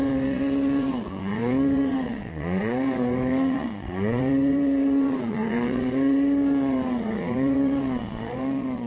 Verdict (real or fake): fake